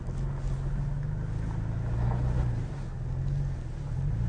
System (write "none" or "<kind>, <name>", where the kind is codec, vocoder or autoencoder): none